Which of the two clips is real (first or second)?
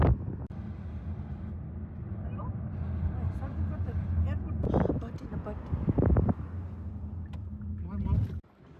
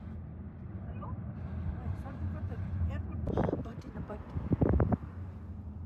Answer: first